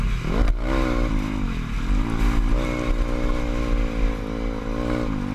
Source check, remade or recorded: recorded